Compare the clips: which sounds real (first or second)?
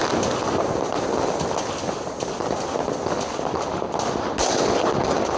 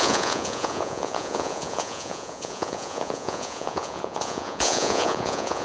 first